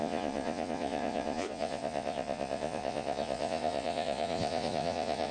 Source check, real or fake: fake